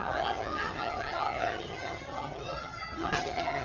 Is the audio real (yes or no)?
no